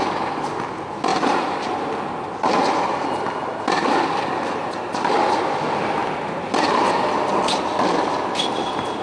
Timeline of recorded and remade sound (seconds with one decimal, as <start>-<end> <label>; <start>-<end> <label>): 0.0-1.1 recorded; 1.1-1.7 remade; 1.7-9.0 recorded